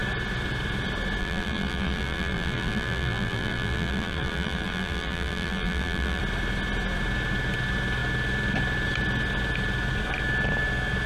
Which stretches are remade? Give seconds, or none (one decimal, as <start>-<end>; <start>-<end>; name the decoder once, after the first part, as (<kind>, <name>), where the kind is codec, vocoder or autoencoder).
1.2-6.2 (vocoder, BigVGAN v2)